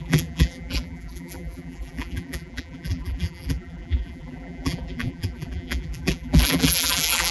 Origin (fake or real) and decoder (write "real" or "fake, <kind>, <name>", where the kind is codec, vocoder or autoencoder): fake, vocoder, BigVGAN v2